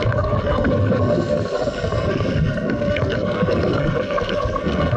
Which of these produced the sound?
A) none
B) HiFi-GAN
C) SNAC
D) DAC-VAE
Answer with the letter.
C